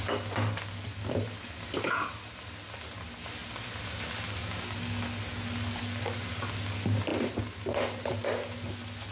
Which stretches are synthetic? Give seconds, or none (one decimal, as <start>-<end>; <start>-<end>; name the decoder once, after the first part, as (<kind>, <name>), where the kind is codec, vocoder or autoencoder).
none